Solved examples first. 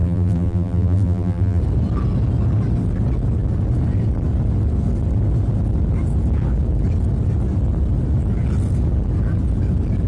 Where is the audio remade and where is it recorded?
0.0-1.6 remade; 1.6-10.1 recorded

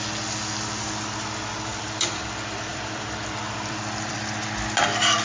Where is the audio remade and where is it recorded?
0.0-1.7 recorded; 1.7-2.2 remade; 2.2-2.7 recorded; 2.7-4.2 remade; 4.2-5.2 recorded

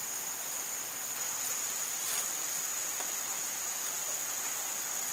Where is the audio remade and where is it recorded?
0.0-1.5 recorded; 1.5-5.1 remade

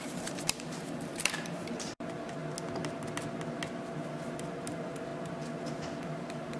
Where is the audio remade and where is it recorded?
0.0-2.4 remade; 2.4-4.6 recorded; 4.6-5.1 remade; 5.1-5.7 recorded; 5.7-6.6 remade

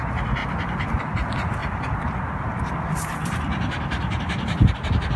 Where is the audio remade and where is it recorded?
0.0-0.4 recorded; 0.4-1.0 remade; 1.0-1.6 recorded; 1.6-4.7 remade; 4.7-5.2 recorded

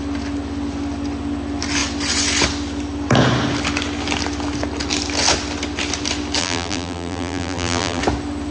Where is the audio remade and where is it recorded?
0.0-6.4 recorded; 6.4-8.0 remade; 8.0-8.5 recorded

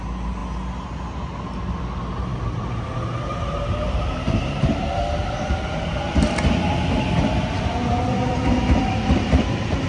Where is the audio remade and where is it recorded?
0.0-2.3 recorded; 2.3-5.0 remade; 5.0-7.8 recorded; 7.8-9.9 remade